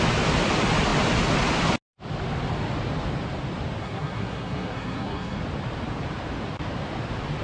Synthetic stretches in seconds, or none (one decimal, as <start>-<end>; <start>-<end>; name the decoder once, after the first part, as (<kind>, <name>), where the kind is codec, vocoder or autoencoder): 3.8-5.4 (codec, SNAC)